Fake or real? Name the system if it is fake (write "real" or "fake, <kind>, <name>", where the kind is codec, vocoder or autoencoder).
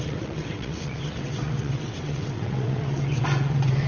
fake, vocoder, WaveNeXt